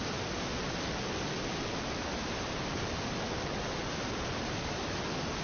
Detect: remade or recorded recorded